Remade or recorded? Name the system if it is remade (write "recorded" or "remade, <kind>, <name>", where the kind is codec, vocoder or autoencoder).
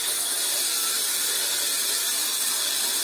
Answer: recorded